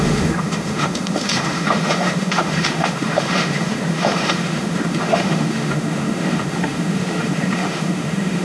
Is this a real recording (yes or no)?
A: no